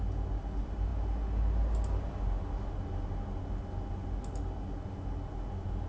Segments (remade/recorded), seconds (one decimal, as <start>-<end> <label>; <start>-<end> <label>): 0.0-5.9 recorded